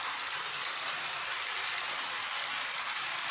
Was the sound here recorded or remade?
recorded